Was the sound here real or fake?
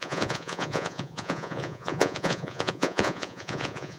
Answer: fake